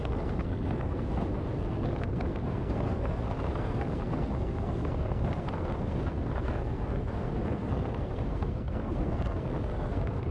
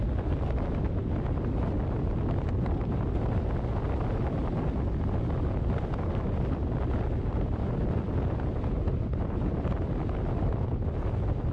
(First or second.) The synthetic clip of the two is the first